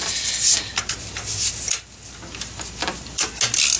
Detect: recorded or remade recorded